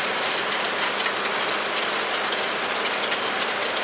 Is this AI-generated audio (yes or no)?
no